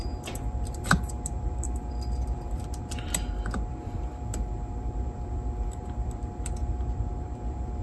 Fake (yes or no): yes